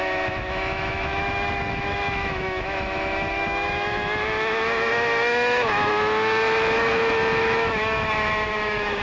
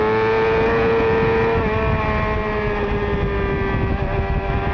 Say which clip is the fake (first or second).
first